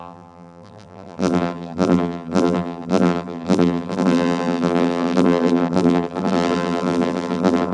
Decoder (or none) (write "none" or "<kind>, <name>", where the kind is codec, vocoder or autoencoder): vocoder, BigVGAN v2